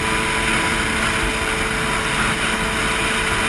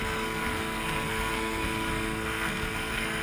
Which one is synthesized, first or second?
second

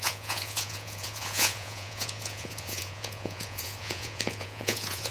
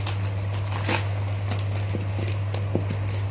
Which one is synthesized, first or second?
first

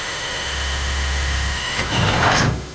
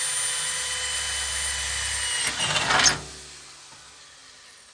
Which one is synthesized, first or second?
first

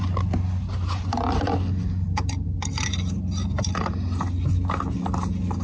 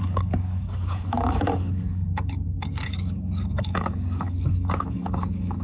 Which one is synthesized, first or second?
second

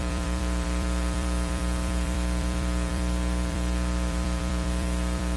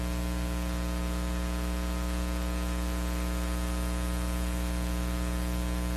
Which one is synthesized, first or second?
first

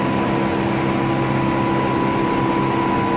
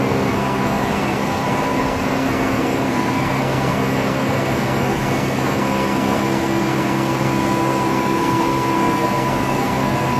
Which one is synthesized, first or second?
second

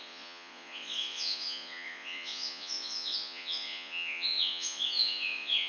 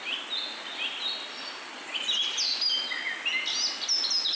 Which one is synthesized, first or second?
first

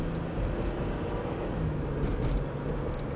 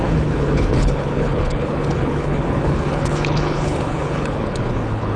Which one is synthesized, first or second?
second